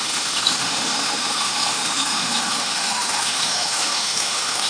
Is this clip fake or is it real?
fake